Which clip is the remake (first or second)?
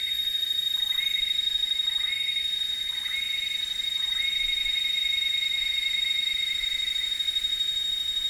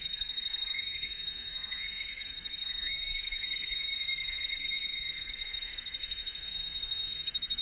second